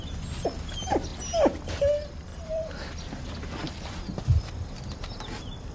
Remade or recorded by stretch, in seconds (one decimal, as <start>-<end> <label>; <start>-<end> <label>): 0.0-2.3 recorded; 2.3-3.2 remade; 3.2-5.7 recorded